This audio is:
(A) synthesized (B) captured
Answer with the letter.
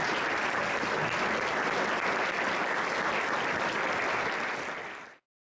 B